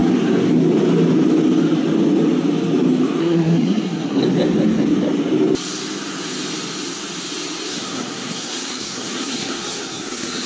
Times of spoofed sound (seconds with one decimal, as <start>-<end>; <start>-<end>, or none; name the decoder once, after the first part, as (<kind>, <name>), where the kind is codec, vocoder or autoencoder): 3.2-4.2 (codec, SNAC); 7.7-10.5